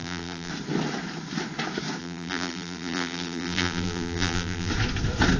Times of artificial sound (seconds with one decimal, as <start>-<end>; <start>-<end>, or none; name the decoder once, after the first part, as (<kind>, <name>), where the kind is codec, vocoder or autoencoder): 0.0-0.5 (vocoder, BigVGAN v2); 2.0-4.7